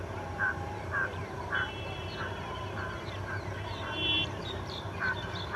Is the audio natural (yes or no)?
no